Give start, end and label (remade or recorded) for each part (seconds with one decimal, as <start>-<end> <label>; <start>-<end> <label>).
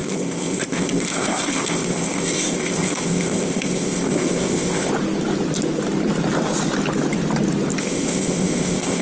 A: 0.0-4.9 remade; 4.9-7.8 recorded; 7.8-9.0 remade